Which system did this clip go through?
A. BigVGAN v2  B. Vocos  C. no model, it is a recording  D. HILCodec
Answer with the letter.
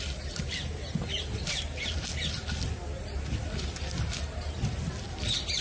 C